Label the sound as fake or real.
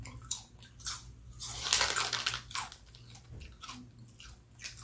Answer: real